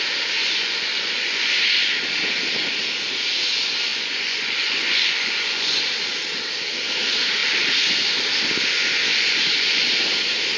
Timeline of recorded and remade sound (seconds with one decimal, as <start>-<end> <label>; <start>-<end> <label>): 0.0-0.4 recorded; 0.4-1.5 remade; 1.5-3.9 recorded; 3.9-5.8 remade; 5.8-9.1 recorded; 9.1-9.9 remade; 9.9-10.6 recorded